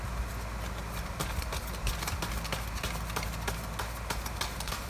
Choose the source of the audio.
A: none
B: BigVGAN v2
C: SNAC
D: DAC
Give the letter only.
A